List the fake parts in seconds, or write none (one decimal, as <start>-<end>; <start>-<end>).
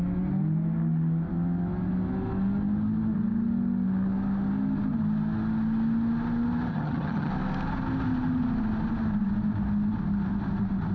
6.7-7.3